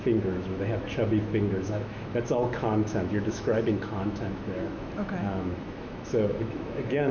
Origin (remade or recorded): remade